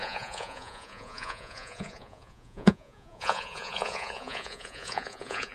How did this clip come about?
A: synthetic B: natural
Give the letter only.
A